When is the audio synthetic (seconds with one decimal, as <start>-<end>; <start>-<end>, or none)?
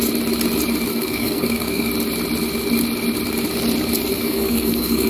0.9-1.9; 4.1-5.1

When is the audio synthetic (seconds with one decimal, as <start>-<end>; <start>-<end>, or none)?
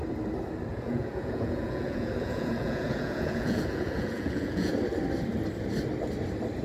0.7-4.7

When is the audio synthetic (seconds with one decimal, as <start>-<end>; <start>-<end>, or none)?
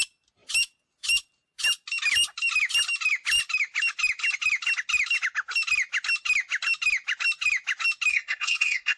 8.1-9.0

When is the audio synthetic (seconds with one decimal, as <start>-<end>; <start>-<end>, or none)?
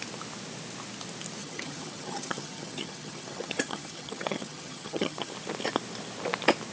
1.4-5.3